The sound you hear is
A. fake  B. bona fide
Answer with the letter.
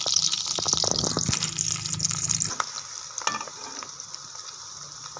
B